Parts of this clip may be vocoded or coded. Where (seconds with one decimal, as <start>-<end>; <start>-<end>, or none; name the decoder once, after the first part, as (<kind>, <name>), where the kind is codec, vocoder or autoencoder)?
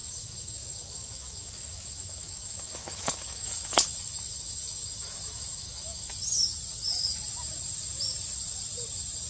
0.0-6.1 (autoencoder, DAC-VAE)